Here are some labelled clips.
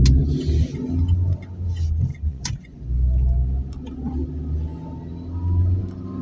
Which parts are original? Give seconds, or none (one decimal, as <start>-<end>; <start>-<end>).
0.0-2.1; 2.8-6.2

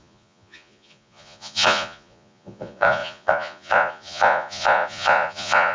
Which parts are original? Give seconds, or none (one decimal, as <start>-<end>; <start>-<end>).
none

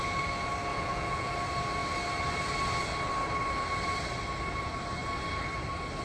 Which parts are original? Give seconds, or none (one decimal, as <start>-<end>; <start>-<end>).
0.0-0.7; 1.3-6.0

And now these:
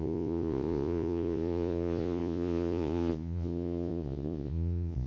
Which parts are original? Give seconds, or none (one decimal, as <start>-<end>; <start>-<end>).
none